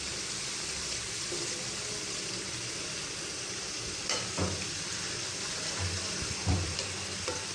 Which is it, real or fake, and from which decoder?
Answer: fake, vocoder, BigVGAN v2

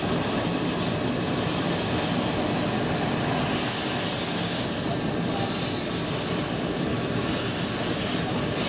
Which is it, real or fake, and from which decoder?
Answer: real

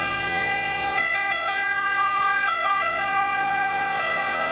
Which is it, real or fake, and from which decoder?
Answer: fake, vocoder, Vocos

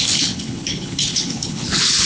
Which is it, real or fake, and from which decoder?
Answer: fake, codec, HILCodec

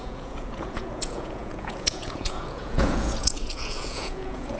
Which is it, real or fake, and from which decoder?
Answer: fake, vocoder, Vocos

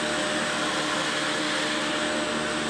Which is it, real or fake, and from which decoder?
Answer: real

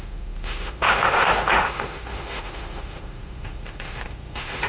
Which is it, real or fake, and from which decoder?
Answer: fake, autoencoder, DAC-VAE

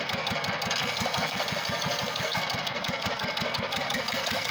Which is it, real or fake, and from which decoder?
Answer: fake, codec, SNAC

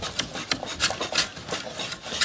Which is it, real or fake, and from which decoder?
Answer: real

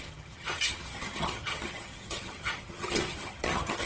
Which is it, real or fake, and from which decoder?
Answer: fake, vocoder, HiFi-GAN